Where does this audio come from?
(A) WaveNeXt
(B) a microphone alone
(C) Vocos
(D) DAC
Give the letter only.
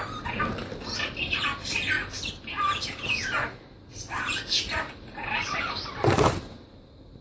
B